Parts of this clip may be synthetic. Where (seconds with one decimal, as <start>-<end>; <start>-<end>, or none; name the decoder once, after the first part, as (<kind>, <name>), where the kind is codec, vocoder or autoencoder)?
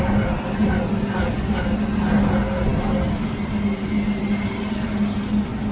none